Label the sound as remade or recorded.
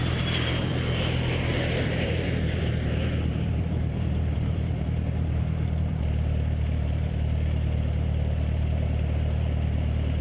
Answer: remade